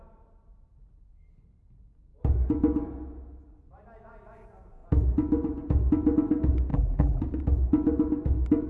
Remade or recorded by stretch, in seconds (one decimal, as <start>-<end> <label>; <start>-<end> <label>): 0.0-6.7 recorded; 6.7-7.2 remade; 7.2-8.7 recorded